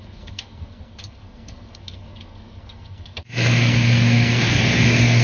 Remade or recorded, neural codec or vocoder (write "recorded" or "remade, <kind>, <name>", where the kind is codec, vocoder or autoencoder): remade, codec, SNAC